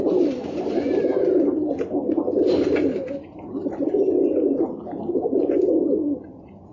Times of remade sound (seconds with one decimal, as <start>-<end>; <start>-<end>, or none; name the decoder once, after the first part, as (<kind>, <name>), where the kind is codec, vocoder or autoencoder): none